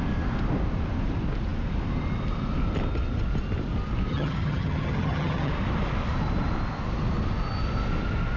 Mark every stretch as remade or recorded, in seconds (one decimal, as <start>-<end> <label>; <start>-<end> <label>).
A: 0.0-4.1 recorded; 4.1-5.5 remade; 5.5-8.4 recorded

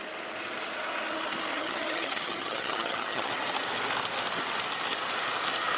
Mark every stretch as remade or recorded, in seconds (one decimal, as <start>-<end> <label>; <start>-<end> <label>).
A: 0.0-1.5 recorded; 1.5-3.3 remade; 3.3-5.8 recorded

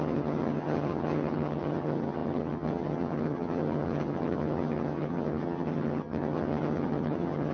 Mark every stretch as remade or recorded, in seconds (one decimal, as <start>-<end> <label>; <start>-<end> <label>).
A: 0.0-7.5 remade

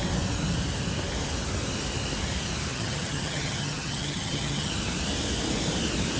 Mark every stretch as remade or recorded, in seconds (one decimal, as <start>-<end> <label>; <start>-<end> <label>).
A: 0.0-2.7 recorded; 2.7-4.7 remade; 4.7-6.2 recorded

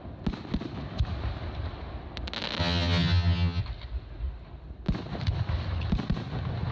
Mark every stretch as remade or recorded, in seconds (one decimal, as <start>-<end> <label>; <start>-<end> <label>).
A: 0.0-2.6 recorded; 2.6-3.6 remade; 3.6-6.7 recorded

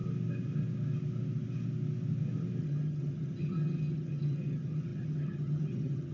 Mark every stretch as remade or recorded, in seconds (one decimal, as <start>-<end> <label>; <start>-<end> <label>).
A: 0.0-2.6 recorded; 2.6-6.1 remade

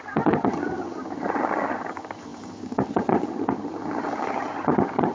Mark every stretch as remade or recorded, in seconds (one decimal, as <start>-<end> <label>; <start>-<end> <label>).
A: 0.0-5.1 remade